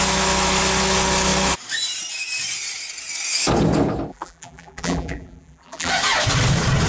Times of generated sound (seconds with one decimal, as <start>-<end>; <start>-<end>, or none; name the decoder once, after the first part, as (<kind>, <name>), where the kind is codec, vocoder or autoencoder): 4.1-5.9 (vocoder, BigVGAN v2)